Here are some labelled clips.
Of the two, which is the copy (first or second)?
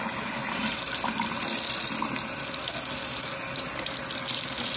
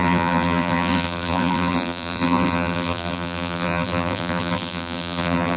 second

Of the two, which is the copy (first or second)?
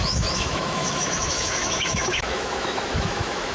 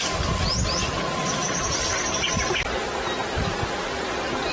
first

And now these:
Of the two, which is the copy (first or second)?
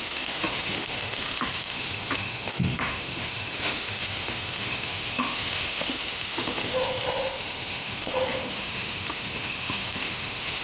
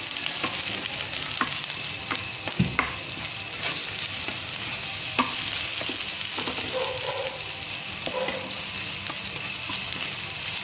first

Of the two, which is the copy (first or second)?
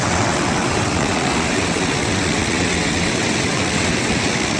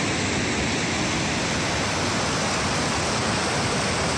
first